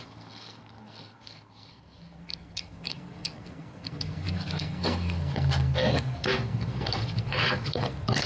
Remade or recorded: remade